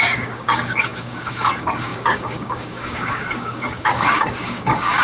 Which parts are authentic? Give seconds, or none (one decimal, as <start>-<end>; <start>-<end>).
none